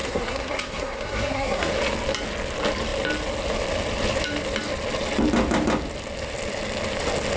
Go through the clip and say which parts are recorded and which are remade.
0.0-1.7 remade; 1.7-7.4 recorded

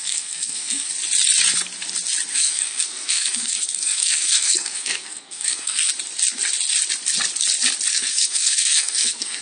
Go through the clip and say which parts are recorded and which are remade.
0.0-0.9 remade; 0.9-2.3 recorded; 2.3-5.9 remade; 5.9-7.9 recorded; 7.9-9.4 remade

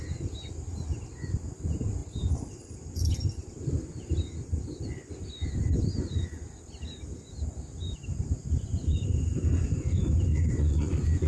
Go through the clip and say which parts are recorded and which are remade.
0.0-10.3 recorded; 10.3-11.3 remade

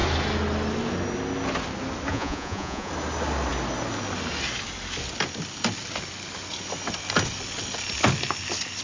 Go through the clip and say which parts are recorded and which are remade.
0.0-2.1 recorded; 2.1-2.9 remade; 2.9-8.8 recorded

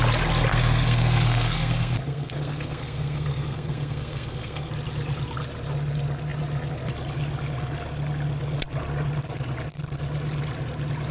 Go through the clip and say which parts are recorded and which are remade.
0.0-0.5 recorded; 0.5-4.7 remade; 4.7-11.1 recorded